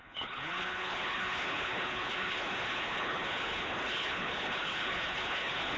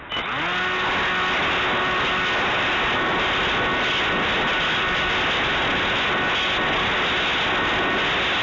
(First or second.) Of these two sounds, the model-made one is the first